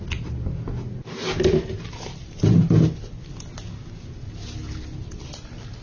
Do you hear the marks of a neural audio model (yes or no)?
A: no